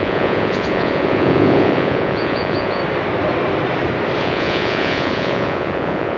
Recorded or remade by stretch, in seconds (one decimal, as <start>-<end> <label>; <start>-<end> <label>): 0.0-2.8 remade; 2.8-4.2 recorded; 4.2-6.2 remade